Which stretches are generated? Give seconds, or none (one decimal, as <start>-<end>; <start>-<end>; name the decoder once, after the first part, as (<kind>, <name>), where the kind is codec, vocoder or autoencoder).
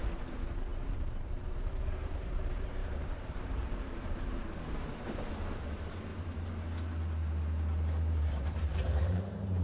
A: 0.0-6.1 (vocoder, BigVGAN v2); 8.2-9.6